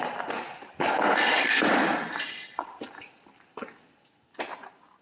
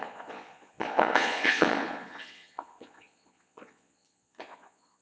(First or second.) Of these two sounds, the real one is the first